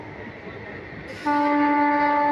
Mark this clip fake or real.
real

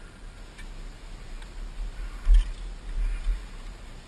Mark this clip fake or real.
real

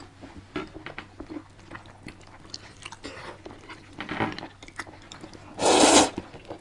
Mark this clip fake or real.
real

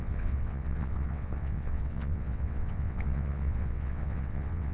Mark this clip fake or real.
fake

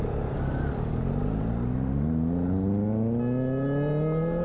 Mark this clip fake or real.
real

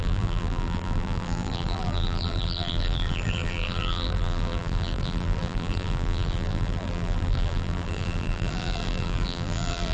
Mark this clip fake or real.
fake